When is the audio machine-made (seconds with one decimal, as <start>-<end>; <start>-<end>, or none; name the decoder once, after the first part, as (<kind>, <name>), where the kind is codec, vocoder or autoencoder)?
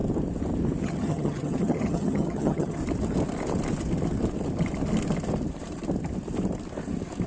0.8-2.8 (vocoder, HiFi-GAN)